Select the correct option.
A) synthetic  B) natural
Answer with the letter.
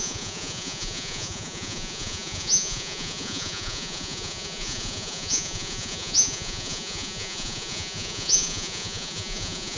A